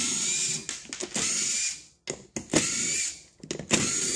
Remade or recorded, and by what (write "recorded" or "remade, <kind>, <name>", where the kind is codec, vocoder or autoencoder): recorded